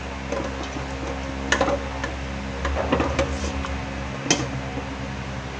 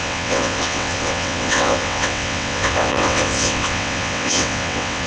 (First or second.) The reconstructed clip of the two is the second